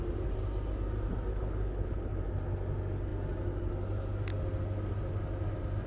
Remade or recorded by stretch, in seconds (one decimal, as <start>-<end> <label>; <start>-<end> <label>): 0.0-1.3 recorded; 1.3-2.2 remade; 2.2-5.9 recorded